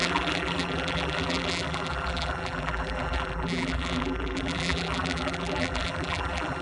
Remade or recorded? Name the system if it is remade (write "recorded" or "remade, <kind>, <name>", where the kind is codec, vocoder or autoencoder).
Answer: remade, vocoder, BigVGAN v2